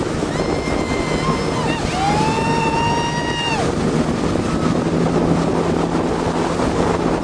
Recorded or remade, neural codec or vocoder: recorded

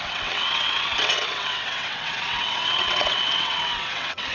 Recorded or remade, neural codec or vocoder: remade, vocoder, WaveNeXt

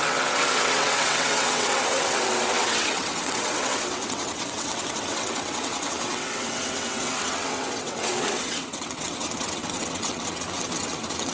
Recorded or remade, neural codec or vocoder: remade, vocoder, WaveNeXt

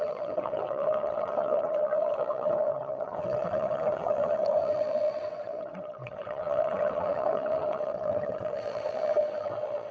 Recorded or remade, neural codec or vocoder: remade, vocoder, WaveNeXt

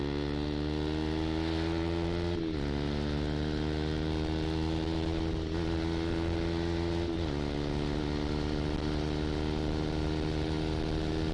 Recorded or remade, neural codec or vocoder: recorded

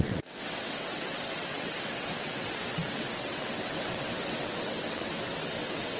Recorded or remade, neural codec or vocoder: remade, vocoder, WaveNeXt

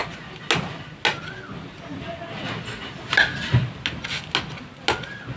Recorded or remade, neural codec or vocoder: recorded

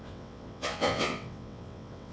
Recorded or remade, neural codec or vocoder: remade, vocoder, WaveNeXt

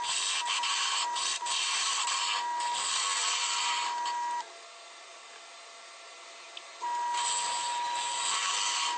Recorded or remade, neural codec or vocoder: recorded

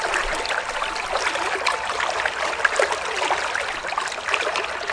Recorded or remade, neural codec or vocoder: recorded